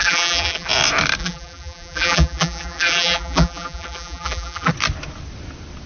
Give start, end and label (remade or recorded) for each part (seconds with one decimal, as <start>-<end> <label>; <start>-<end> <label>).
0.0-0.7 remade; 0.7-1.2 recorded; 1.2-4.7 remade; 4.7-5.9 recorded